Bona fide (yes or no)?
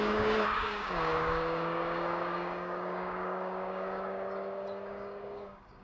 no